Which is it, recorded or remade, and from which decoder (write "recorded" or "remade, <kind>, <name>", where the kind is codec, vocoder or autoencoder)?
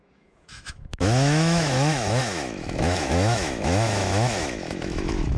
remade, autoencoder, DAC-VAE